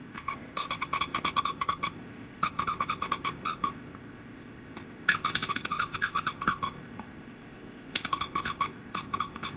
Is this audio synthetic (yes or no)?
yes